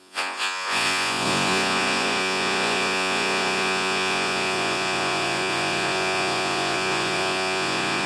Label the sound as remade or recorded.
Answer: remade